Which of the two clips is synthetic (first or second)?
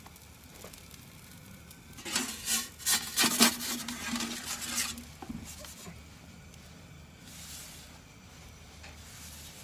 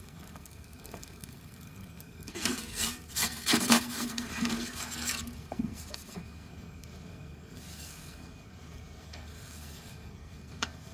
second